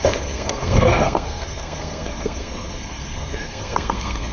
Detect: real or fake fake